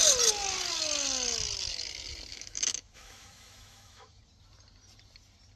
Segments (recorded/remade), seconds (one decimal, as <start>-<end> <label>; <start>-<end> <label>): 0.0-2.3 recorded; 2.3-4.2 remade; 4.2-5.6 recorded